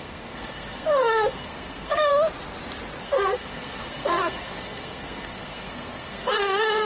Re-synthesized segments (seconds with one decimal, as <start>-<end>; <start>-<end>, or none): 0.0-2.1; 3.0-6.9